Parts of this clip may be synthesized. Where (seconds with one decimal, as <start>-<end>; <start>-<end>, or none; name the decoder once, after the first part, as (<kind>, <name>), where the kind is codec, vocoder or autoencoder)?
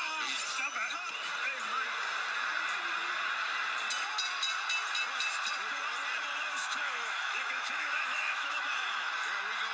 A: 6.6-9.1 (autoencoder, DAC-VAE)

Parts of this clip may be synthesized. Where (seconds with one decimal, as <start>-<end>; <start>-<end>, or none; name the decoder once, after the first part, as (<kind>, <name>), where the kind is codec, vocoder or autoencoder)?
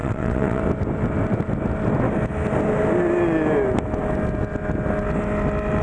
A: 0.0-0.6 (vocoder, WaveNeXt)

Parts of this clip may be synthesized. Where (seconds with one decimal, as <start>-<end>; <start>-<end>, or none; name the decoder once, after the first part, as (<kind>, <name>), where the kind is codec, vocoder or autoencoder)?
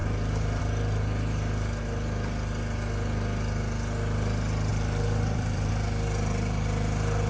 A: 0.0-0.6 (vocoder, BigVGAN v2); 4.7-5.7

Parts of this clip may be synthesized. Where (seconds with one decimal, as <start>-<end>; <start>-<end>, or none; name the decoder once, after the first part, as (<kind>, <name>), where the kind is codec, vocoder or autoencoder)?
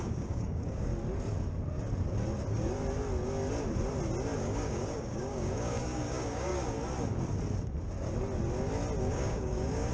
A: 0.0-0.9 (codec, DAC); 4.4-6.5; 9.0-9.9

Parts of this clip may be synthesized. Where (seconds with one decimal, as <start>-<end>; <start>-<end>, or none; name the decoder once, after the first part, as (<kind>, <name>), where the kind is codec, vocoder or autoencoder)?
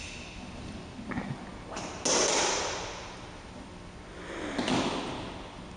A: none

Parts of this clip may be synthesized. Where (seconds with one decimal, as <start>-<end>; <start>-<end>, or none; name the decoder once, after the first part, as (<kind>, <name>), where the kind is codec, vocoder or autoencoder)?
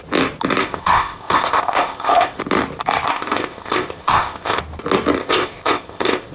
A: 0.6-2.4 (codec, ZipCodec); 3.1-4.6; 5.2-6.3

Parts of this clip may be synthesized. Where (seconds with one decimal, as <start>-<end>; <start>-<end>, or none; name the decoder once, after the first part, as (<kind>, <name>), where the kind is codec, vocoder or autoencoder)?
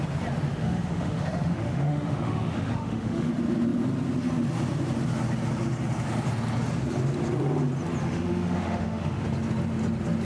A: 0.6-3.3 (autoencoder, DAC-VAE); 8.0-9.2